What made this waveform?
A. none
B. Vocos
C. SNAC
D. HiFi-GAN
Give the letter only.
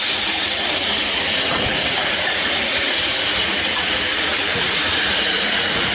B